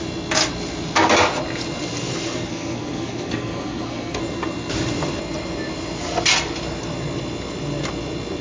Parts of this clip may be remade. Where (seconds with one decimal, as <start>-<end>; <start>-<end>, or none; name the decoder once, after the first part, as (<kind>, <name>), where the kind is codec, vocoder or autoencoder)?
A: 2.5-4.2 (codec, SNAC)